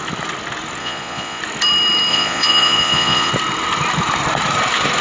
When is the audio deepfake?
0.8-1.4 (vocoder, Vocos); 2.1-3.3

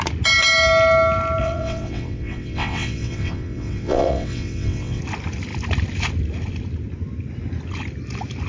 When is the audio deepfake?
1.4-5.0 (vocoder, WaveNeXt)

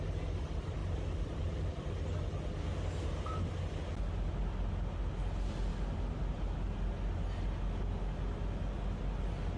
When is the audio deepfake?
none

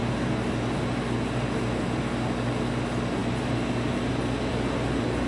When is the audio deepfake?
none

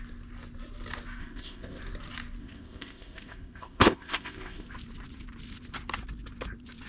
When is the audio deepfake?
1.2-1.8 (codec, ZipCodec); 2.4-4.7